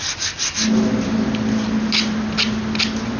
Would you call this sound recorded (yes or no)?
yes